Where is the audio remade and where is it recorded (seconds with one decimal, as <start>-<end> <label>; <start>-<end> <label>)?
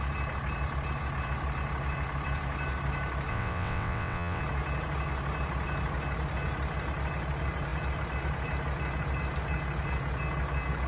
0.0-3.3 recorded; 3.3-4.4 remade; 4.4-10.9 recorded